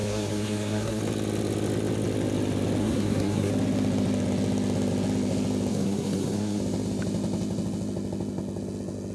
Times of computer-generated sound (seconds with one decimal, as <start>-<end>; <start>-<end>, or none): 0.0-1.0; 2.8-3.5; 5.7-6.6